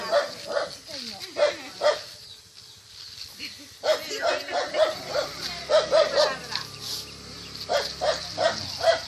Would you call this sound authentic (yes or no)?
yes